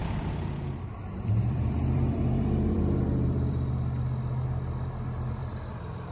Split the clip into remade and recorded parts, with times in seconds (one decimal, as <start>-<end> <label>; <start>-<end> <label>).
0.0-3.7 remade; 3.7-5.4 recorded; 5.4-6.1 remade